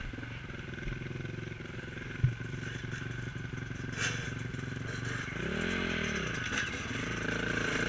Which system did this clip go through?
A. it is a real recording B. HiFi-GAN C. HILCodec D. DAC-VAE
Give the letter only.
A